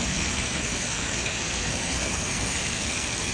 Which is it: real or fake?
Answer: fake